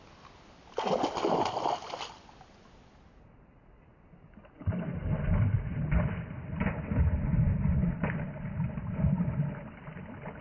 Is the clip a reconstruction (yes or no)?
no